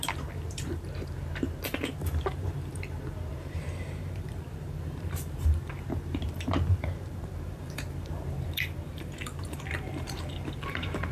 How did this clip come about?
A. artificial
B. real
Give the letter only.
A